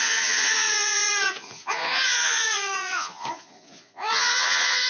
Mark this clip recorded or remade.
remade